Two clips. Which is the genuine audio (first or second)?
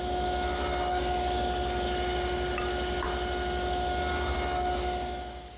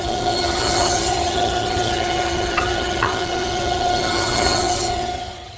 first